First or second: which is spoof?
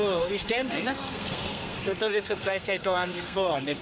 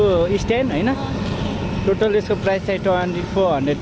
first